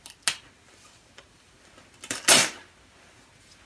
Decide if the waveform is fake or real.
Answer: real